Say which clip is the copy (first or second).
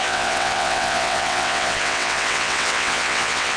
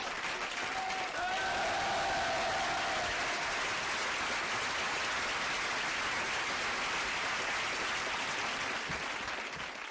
first